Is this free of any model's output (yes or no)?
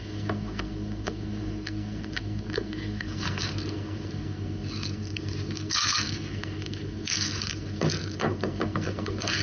no